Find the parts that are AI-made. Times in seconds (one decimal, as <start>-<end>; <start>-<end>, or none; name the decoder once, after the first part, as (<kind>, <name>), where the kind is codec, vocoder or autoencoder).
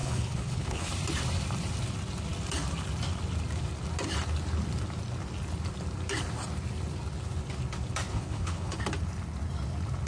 0.0-0.9 (codec, HILCodec); 8.1-8.8